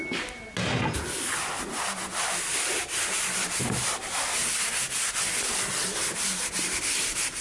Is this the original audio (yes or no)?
yes